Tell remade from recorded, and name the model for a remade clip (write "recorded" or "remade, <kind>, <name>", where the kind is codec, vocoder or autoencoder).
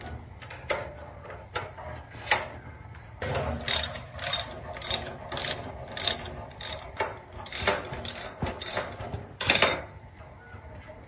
recorded